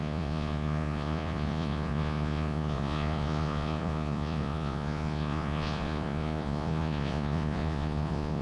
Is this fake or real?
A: fake